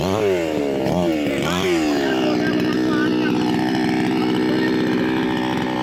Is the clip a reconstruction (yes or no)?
no